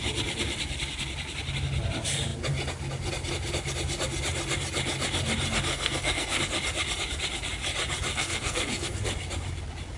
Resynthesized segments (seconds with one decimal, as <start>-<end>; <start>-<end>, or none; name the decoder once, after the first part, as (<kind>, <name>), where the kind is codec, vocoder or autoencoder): 5.7-6.4 (codec, SNAC); 8.1-9.0